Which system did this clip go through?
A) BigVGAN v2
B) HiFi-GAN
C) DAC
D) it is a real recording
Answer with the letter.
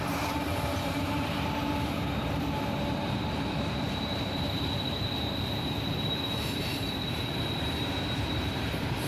A